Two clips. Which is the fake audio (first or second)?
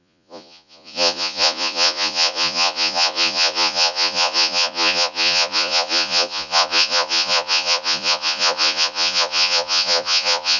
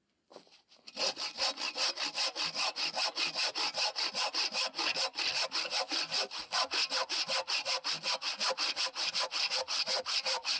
first